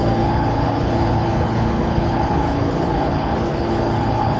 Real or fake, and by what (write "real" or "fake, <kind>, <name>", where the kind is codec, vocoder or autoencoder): fake, codec, HILCodec